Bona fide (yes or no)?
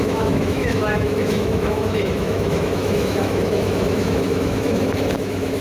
no